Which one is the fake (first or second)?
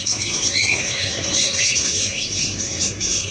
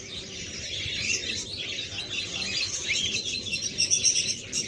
first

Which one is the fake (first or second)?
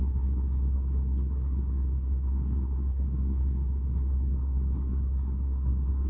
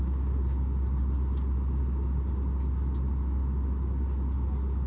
first